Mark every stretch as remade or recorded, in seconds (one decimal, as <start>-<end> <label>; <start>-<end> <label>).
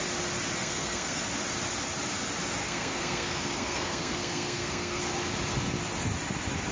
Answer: 0.0-0.6 recorded; 0.6-1.2 remade; 1.2-2.6 recorded; 2.6-5.0 remade; 5.0-6.7 recorded